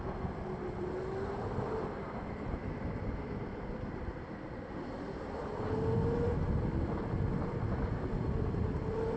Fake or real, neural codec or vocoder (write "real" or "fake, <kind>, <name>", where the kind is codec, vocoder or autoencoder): real